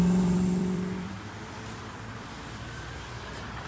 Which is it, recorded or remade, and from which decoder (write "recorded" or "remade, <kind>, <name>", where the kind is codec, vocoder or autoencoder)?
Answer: remade, vocoder, BigVGAN v2